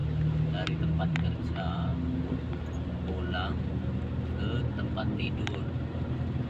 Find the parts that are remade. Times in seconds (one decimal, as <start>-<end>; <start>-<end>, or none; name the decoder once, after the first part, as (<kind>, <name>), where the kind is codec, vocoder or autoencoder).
0.8-1.9 (vocoder, BigVGAN v2); 4.6-6.5